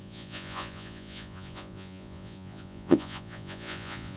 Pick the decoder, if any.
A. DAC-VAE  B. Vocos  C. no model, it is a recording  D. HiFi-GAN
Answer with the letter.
B